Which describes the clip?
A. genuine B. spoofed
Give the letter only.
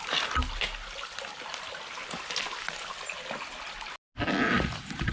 A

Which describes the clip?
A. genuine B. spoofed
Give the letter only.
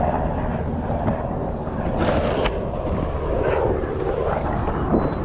A